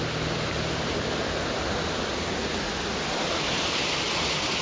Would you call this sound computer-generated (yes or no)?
no